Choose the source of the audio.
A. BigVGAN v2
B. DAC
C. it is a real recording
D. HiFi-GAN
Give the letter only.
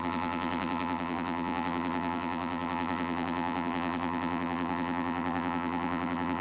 A